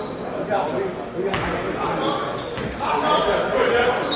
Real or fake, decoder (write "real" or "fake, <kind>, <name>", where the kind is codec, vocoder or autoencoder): real